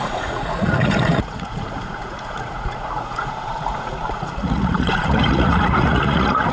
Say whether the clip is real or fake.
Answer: fake